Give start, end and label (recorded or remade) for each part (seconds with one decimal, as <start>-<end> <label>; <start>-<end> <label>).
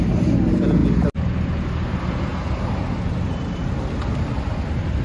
0.0-5.0 recorded